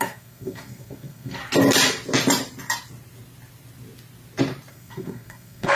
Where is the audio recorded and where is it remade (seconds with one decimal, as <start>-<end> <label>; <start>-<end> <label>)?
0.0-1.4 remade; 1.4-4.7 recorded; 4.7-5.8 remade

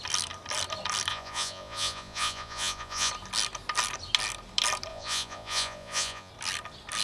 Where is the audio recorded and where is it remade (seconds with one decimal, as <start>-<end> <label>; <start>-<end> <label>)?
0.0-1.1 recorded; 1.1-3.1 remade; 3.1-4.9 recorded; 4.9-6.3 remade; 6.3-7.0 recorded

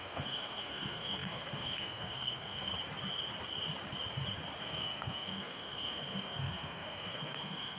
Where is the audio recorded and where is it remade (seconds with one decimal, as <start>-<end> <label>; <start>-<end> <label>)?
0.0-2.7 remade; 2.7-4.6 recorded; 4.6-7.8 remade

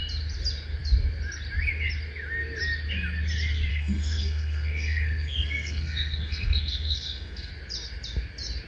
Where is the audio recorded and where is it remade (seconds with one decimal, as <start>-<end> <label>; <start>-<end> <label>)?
0.0-3.7 recorded; 3.7-7.5 remade; 7.5-8.7 recorded

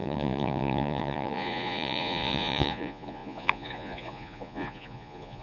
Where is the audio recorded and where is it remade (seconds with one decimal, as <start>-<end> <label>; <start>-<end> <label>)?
0.0-5.4 remade

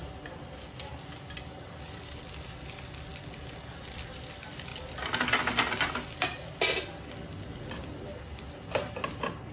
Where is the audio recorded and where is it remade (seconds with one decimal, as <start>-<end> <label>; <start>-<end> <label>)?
0.0-9.5 recorded

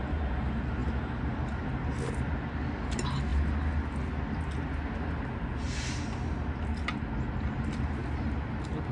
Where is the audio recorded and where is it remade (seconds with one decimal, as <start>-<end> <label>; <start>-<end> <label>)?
0.0-8.9 recorded